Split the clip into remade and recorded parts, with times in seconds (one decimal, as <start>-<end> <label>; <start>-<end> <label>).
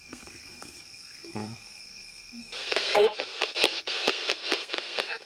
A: 0.0-5.3 remade